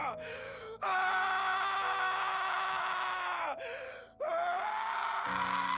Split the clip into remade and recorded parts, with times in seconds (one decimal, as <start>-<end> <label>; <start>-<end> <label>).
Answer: 0.0-1.1 remade; 1.1-2.3 recorded; 2.3-3.4 remade; 3.4-5.8 recorded